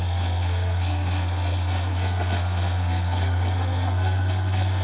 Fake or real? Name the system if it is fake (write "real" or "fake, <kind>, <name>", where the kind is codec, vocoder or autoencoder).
fake, codec, SNAC